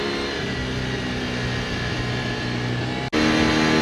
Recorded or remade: recorded